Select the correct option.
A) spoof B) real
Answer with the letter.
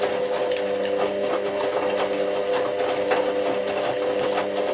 B